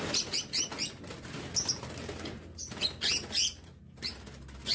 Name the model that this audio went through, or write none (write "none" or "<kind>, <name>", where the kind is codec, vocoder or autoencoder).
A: none